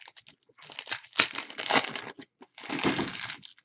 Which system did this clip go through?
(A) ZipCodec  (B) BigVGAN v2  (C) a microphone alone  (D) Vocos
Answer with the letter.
C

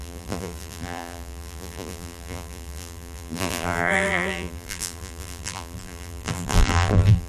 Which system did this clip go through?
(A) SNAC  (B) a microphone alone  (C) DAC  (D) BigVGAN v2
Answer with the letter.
D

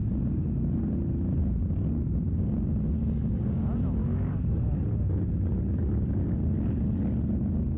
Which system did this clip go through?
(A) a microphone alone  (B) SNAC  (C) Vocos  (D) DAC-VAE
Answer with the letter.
A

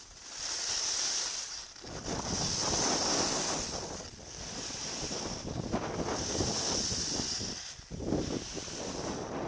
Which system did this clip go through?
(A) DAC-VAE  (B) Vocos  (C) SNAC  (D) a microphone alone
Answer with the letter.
D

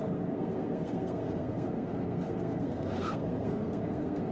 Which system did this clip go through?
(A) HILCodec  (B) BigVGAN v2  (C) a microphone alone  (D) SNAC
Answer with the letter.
D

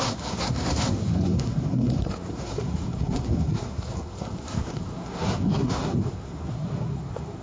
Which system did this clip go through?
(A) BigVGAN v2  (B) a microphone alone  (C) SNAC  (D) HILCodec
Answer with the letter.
C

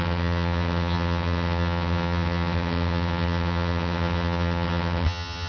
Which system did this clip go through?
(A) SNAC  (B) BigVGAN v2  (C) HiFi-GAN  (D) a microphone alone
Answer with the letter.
C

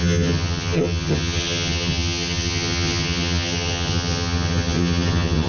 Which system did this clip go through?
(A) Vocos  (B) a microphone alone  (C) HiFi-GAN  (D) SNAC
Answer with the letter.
C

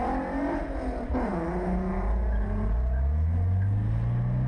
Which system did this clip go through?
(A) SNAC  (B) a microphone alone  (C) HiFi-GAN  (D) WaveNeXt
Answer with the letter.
B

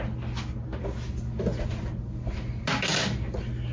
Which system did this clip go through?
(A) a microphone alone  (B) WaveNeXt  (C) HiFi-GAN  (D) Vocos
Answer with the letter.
A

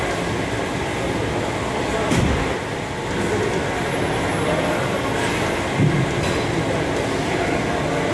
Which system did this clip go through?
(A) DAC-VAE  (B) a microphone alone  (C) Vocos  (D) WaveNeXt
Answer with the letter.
B